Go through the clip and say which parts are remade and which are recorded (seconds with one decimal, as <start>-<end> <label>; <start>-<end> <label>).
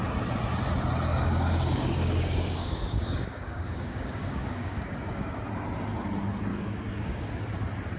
0.0-1.1 recorded; 1.1-5.4 remade; 5.4-6.5 recorded; 6.5-7.3 remade; 7.3-8.0 recorded